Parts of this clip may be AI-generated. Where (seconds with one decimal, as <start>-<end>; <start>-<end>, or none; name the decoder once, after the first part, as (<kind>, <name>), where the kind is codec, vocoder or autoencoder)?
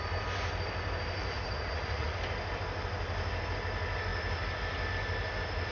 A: 1.2-2.2 (vocoder, Vocos)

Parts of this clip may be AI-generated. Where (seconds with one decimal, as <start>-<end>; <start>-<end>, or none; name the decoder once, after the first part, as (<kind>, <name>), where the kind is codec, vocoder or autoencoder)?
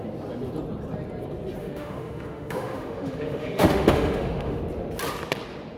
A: 1.6-4.6 (autoencoder, DAC-VAE)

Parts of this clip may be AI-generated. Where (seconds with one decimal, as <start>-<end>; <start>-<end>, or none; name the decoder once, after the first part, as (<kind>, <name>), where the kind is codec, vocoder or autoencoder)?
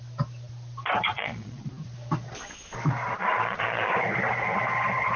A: 1.1-1.7 (vocoder, Vocos); 3.2-3.9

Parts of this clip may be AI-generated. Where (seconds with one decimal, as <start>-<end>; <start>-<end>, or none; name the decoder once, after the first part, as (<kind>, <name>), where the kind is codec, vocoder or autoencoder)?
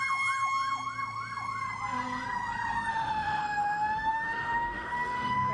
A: 2.9-5.5 (autoencoder, DAC-VAE)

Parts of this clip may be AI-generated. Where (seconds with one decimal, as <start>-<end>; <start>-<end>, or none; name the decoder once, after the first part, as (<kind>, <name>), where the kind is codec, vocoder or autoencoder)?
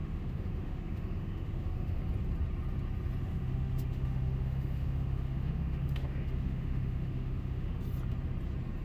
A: 0.0-2.0 (autoencoder, DAC-VAE); 3.2-7.8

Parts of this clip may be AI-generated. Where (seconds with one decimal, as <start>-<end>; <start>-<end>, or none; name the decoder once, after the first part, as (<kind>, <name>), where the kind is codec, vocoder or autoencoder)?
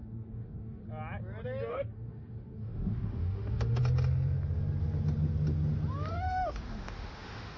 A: 0.0-0.8 (autoencoder, DAC-VAE); 1.7-3.8; 6.1-7.6